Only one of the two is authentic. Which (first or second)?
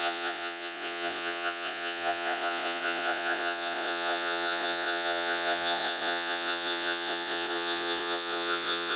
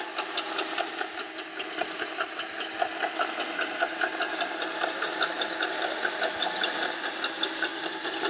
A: second